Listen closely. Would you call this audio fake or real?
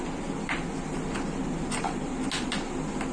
real